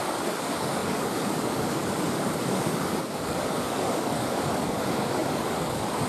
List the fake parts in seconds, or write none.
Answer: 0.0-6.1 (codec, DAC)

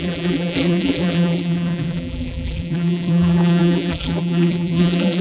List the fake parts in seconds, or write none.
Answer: 0.0-5.2 (vocoder, BigVGAN v2)

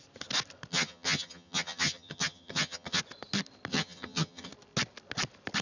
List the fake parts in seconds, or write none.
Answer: 0.7-3.0 (vocoder, HiFi-GAN); 3.7-4.5

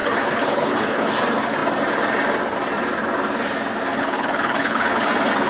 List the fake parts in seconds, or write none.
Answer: 0.0-1.1 (codec, HILCodec); 3.9-5.1

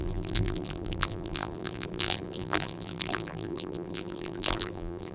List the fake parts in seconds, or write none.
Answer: 0.0-5.1 (vocoder, BigVGAN v2)

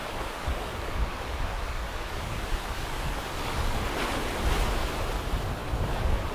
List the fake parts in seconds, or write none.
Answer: 0.0-3.8 (codec, DAC); 5.6-6.3